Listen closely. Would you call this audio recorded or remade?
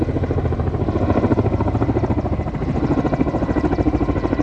recorded